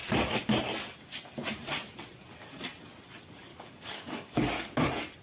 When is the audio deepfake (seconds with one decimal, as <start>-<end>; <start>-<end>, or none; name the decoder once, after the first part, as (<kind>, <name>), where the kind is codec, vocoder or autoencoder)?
3.5-4.4 (codec, DAC)